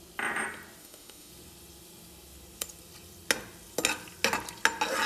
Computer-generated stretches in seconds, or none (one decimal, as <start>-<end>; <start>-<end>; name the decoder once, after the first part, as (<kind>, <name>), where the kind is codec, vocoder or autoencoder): 0.8-1.3 (autoencoder, DAC-VAE)